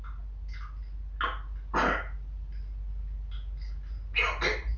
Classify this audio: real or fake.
real